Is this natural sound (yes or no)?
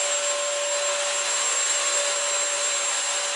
yes